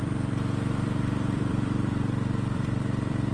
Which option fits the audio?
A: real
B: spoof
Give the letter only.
B